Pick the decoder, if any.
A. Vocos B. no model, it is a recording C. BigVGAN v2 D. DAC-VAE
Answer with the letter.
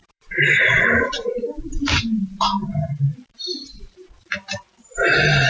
C